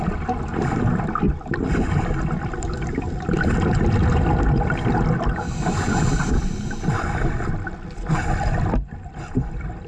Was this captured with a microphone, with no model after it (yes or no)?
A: yes